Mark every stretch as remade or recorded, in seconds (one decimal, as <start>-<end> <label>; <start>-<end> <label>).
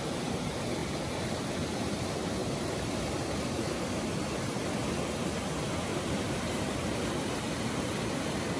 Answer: 0.0-2.4 recorded; 2.4-3.7 remade; 3.7-5.9 recorded; 5.9-7.8 remade; 7.8-8.6 recorded